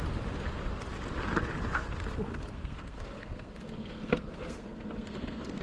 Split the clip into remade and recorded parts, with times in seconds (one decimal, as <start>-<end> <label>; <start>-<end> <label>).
0.0-2.3 recorded; 2.3-5.6 remade